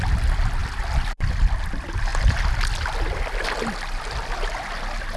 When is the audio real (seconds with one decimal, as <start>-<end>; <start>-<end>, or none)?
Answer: 0.0-5.2